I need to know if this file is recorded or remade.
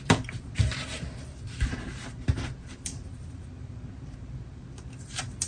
remade